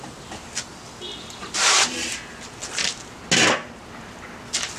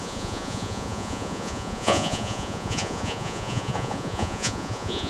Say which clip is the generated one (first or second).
second